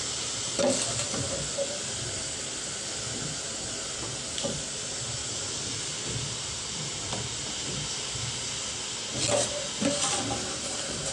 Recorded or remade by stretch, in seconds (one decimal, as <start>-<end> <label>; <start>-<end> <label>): 0.0-5.2 recorded; 5.2-8.8 remade; 8.8-11.1 recorded